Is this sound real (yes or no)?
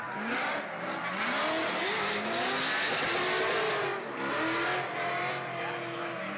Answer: yes